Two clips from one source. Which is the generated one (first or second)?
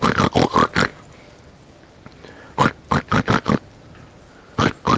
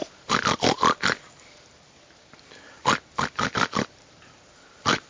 second